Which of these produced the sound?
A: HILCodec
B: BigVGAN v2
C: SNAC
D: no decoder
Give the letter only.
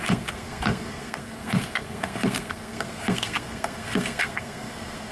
C